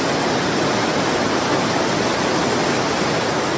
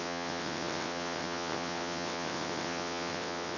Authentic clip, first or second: first